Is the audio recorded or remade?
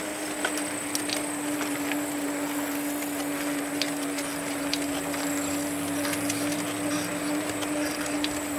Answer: recorded